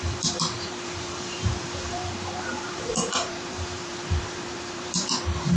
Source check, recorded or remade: remade